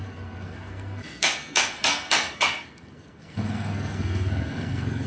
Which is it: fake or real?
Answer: fake